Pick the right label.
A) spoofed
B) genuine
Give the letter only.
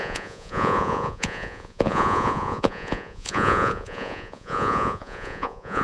A